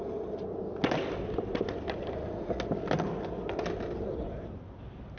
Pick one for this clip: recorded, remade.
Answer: recorded